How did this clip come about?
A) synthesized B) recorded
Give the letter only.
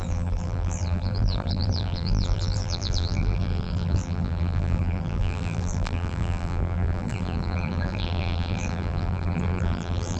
A